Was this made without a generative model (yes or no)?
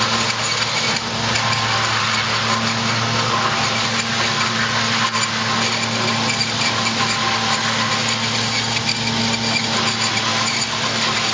yes